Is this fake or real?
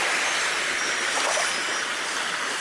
real